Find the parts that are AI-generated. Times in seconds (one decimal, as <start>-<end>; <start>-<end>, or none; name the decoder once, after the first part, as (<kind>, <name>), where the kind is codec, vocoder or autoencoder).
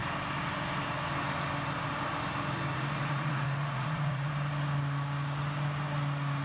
2.7-4.3 (vocoder, Vocos)